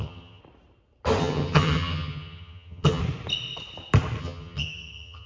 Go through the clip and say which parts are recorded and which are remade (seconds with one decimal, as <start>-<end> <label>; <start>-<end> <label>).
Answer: 0.0-0.4 remade; 0.4-1.2 recorded; 1.2-3.0 remade; 3.0-4.2 recorded; 4.2-5.3 remade